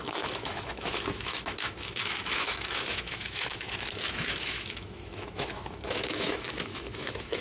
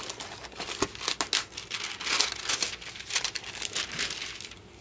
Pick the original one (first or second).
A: second